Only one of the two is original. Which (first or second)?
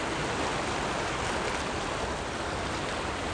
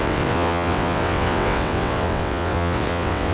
first